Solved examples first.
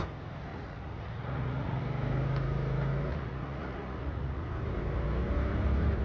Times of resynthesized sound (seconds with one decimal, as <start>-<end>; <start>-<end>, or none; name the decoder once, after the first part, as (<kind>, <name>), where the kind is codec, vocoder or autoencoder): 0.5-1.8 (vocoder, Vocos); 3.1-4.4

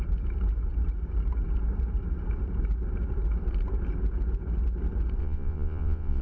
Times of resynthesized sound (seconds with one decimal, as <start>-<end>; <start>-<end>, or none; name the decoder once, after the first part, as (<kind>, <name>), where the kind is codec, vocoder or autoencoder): 5.2-6.2 (vocoder, Vocos)

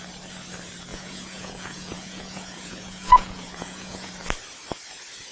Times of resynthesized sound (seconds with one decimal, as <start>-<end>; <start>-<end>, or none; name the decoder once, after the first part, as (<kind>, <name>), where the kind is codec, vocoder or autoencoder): 0.9-4.1 (vocoder, Vocos)

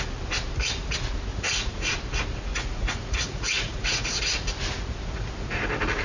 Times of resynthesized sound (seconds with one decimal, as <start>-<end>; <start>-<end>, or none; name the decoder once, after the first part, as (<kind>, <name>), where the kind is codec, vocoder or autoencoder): 1.3-1.9 (vocoder, Vocos); 2.5-4.2

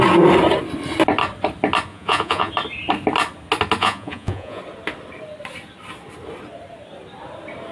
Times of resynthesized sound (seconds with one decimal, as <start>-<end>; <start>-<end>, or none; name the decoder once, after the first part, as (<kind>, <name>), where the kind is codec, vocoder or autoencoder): 1.9-2.5 (vocoder, Vocos); 3.8-4.6

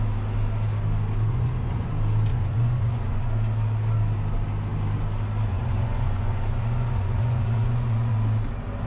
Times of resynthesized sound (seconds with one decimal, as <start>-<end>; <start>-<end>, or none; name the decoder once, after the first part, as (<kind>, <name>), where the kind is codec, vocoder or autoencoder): 1.3-1.9 (vocoder, Vocos); 2.3-3.3; 5.5-8.1

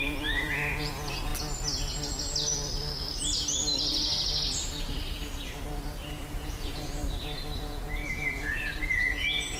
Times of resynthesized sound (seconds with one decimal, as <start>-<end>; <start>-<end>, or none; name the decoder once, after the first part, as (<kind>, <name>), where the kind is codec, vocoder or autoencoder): 0.0-1.3 (vocoder, Vocos); 6.5-7.0; 7.6-9.6